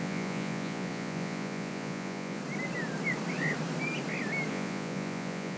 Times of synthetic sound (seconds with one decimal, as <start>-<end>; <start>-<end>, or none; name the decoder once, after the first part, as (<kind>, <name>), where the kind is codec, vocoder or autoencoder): 0.0-2.4 (vocoder, Vocos); 4.5-5.6